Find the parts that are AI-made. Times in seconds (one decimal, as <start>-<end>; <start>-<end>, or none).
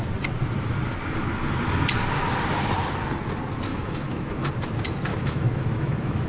3.7-4.5; 5.1-6.3